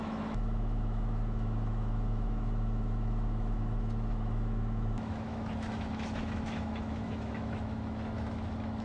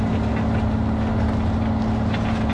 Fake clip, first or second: first